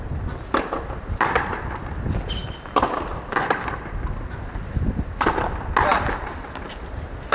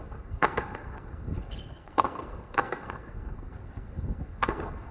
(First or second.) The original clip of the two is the first